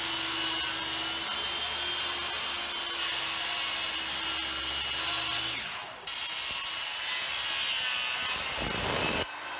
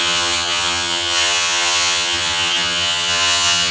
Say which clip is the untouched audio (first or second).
first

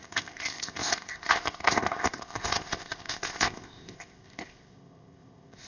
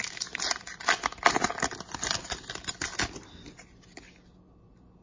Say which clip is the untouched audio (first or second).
second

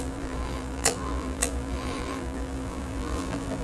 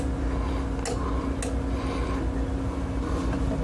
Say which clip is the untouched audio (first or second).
second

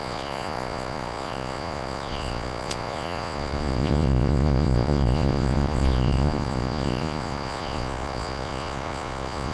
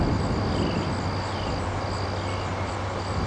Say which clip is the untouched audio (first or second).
second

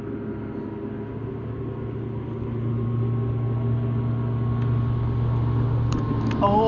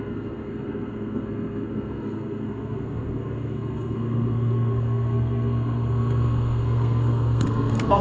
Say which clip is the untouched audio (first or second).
first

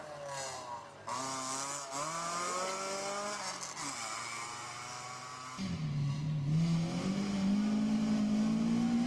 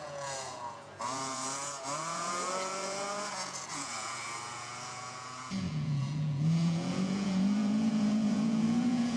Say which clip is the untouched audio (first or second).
first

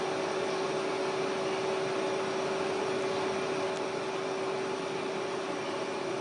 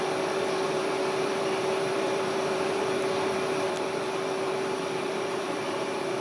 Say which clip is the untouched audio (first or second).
first